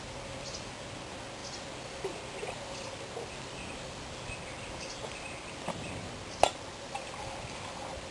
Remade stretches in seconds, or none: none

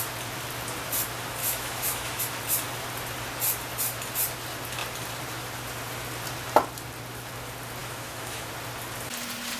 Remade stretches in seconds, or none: 1.4-2.2 (autoencoder, DAC-VAE); 7.8-8.5